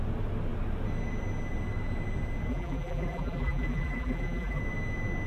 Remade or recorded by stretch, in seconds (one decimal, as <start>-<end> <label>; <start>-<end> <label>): 0.0-2.5 recorded; 2.5-4.6 remade; 4.6-5.3 recorded